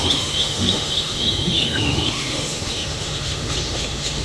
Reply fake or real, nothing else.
fake